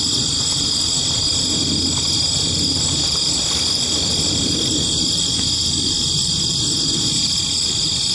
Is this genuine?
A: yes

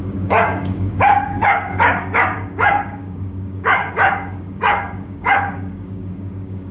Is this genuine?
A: no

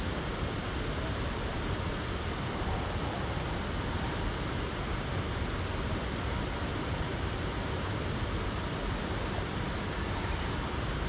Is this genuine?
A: yes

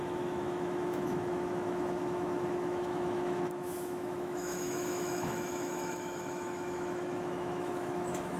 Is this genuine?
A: no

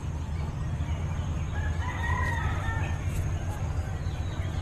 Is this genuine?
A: yes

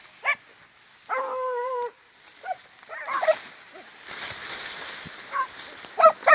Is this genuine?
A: yes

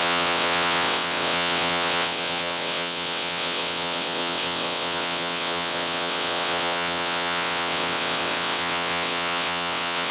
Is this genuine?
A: no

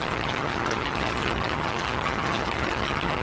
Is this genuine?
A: no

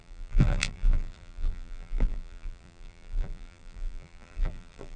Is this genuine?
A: no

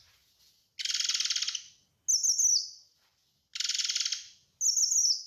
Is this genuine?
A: yes